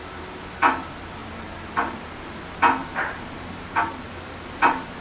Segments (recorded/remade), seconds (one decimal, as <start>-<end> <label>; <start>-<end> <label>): 0.0-1.2 recorded; 1.2-2.3 remade; 2.3-2.8 recorded; 2.8-4.4 remade; 4.4-5.0 recorded

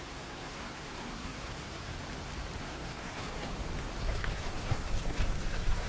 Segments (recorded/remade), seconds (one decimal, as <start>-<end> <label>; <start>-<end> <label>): 0.0-1.9 remade; 1.9-2.6 recorded; 2.6-3.5 remade; 3.5-4.0 recorded; 4.0-5.9 remade

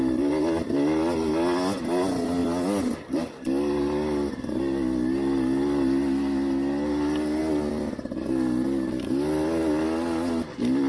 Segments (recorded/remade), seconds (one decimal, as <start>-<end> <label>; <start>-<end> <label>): 0.0-10.9 recorded

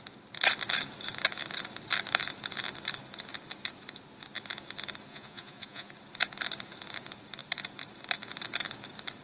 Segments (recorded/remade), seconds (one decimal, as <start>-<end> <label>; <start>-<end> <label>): 0.0-5.1 recorded; 5.1-5.9 remade; 5.9-9.2 recorded

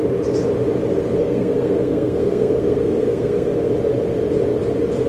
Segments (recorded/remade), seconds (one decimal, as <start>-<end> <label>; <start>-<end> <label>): 0.0-1.2 recorded; 1.2-3.7 remade; 3.7-5.1 recorded

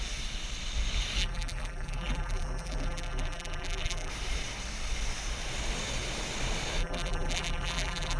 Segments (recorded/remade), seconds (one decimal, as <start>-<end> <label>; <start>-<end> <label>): 0.0-1.2 recorded; 1.2-4.1 remade; 4.1-6.8 recorded; 6.8-8.2 remade

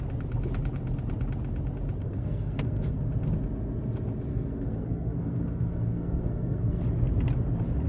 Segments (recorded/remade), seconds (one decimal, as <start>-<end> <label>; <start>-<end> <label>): 0.0-2.0 recorded; 2.0-3.0 remade; 3.0-4.3 recorded; 4.3-6.8 remade; 6.8-7.9 recorded

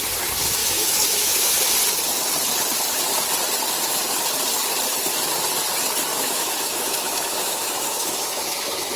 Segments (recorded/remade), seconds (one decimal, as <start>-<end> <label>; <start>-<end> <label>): 0.0-0.6 recorded; 0.6-1.5 remade; 1.5-6.1 recorded; 6.1-9.0 remade